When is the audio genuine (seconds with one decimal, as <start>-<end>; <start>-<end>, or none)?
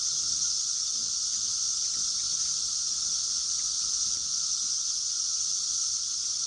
0.0-6.5